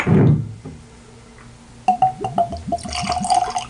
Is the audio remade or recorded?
recorded